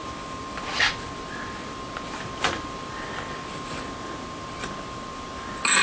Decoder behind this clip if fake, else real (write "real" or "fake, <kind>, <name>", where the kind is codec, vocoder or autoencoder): real